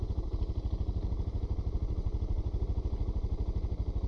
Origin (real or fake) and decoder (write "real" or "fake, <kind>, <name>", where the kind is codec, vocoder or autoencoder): real